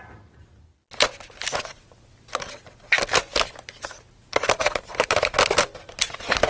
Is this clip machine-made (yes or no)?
no